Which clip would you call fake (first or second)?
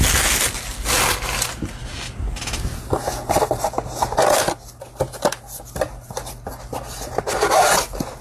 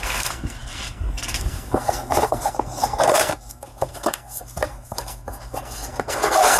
second